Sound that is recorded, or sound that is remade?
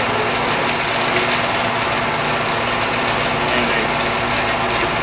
recorded